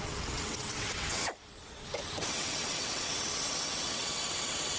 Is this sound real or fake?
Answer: fake